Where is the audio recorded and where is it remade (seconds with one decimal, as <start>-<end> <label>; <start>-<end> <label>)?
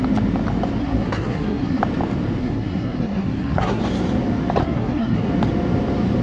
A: 0.0-0.8 recorded; 0.8-1.8 remade; 1.8-2.4 recorded; 2.4-3.8 remade; 3.8-4.6 recorded; 4.6-5.3 remade; 5.3-6.2 recorded